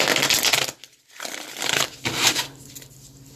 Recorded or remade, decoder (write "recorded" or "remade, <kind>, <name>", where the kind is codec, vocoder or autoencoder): recorded